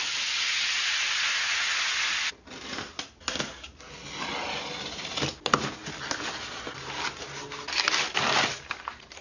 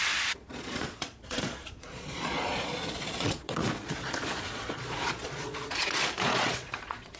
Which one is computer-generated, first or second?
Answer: second